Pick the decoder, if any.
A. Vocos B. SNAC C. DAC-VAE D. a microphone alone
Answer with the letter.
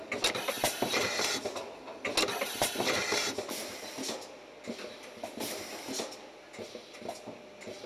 D